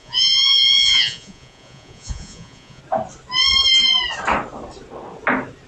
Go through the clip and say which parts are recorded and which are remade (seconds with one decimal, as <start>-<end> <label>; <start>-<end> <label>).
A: 0.0-2.8 remade; 2.8-5.7 recorded